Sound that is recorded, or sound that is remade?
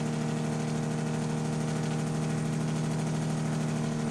recorded